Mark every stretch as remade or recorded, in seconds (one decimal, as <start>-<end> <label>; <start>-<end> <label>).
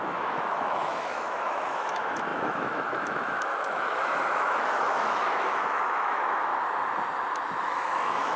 0.0-6.5 remade; 6.5-7.6 recorded; 7.6-8.4 remade